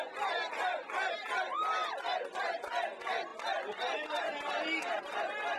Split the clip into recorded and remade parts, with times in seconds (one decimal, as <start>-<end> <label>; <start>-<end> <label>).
0.0-5.6 recorded